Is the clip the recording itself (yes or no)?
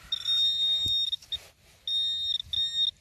yes